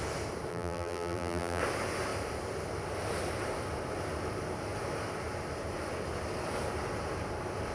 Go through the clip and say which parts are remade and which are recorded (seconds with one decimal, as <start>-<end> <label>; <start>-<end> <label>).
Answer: 0.0-0.5 recorded; 0.5-1.6 remade; 1.6-7.7 recorded